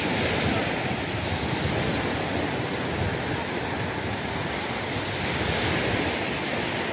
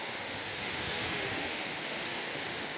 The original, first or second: first